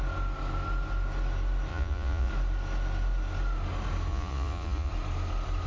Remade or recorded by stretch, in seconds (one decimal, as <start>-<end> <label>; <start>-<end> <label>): 0.0-1.7 recorded; 1.7-2.3 remade; 2.3-4.1 recorded; 4.1-4.9 remade; 4.9-5.7 recorded